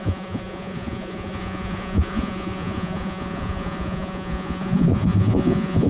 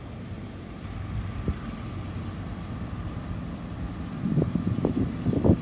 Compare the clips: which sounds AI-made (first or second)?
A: first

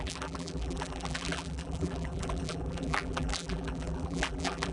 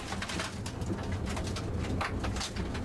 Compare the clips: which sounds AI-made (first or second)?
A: first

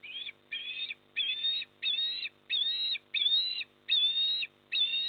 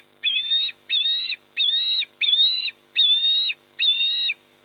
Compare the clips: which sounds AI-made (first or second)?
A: second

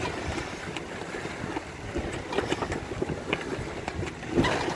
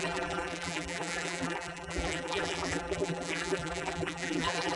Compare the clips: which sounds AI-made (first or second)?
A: second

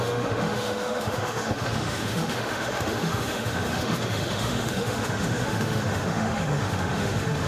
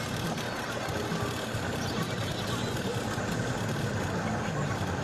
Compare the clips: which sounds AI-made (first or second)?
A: first